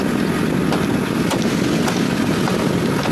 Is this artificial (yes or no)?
no